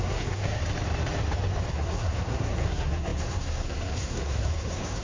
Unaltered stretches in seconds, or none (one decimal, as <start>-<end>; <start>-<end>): 0.6-1.7